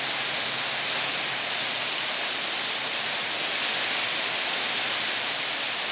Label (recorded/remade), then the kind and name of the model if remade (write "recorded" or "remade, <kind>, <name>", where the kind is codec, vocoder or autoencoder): recorded